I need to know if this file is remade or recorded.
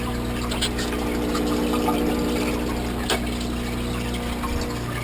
recorded